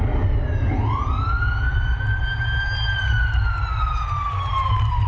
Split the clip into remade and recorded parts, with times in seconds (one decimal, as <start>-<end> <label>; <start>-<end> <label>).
0.0-1.7 recorded; 1.7-5.1 remade